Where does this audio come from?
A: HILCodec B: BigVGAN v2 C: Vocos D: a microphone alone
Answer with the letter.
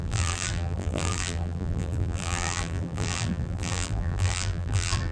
B